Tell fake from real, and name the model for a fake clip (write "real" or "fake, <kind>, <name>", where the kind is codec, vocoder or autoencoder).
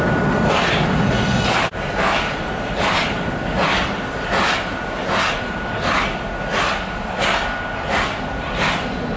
real